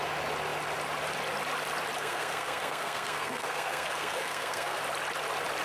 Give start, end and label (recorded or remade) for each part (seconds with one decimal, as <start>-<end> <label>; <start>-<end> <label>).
0.0-2.0 recorded; 2.0-4.8 remade; 4.8-5.6 recorded